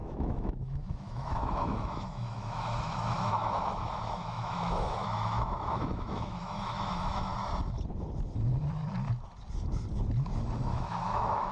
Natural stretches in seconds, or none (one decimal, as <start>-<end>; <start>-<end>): 7.3-10.7